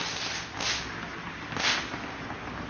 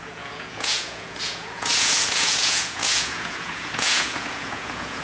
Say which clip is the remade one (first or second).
second